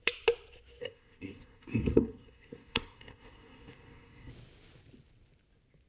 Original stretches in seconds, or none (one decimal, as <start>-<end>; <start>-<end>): 0.0-0.8; 4.3-5.9